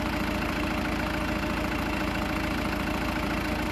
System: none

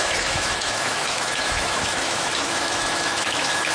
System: autoencoder, DAC-VAE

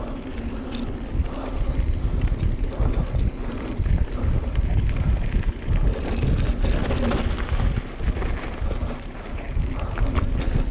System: none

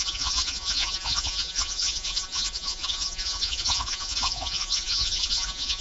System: vocoder, Vocos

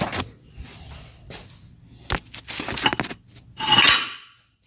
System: none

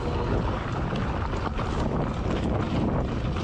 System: none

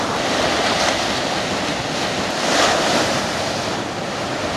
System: none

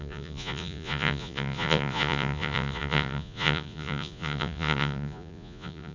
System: vocoder, Vocos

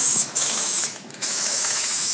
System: autoencoder, DAC-VAE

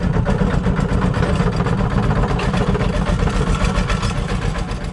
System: none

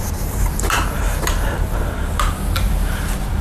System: vocoder, BigVGAN v2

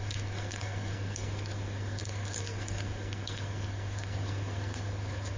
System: codec, SNAC